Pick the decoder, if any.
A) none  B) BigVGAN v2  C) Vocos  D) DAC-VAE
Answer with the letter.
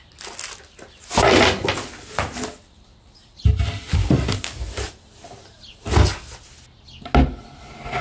A